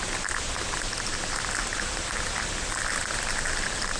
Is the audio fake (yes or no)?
no